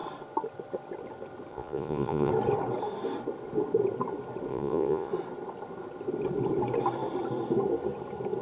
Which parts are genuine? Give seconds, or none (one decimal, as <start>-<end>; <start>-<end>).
0.0-1.5; 2.3-4.5; 5.1-8.4